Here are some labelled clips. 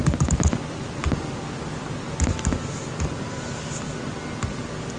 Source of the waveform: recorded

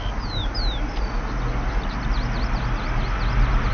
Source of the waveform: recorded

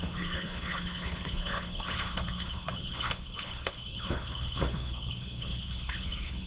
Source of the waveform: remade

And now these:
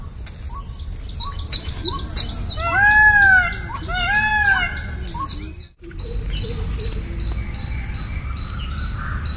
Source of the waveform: recorded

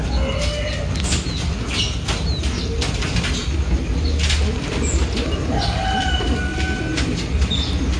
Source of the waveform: recorded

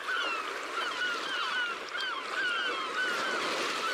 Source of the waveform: recorded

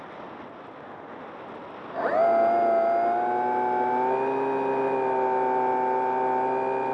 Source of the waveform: recorded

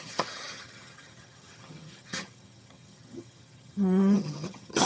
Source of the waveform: remade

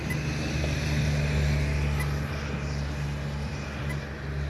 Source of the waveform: recorded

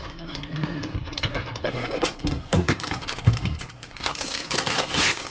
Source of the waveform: remade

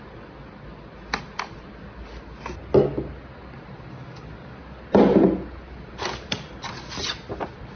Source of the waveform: recorded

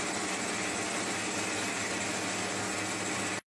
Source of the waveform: recorded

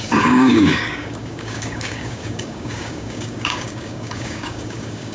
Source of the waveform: remade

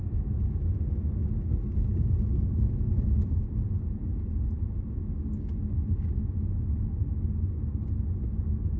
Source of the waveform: recorded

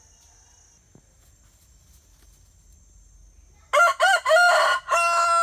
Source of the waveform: recorded